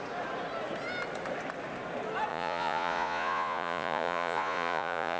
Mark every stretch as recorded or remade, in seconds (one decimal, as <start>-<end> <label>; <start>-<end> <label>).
0.0-2.3 recorded; 2.3-5.2 remade